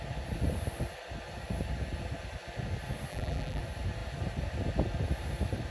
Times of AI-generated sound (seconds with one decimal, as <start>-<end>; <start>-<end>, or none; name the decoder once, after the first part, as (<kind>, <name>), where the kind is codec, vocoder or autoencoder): 3.1-3.6 (vocoder, BigVGAN v2)